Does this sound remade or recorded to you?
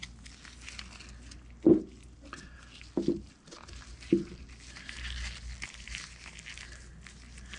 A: recorded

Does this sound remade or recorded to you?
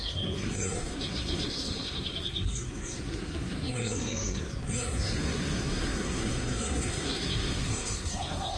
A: remade